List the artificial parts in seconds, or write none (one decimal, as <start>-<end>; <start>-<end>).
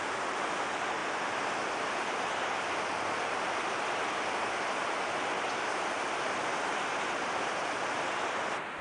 none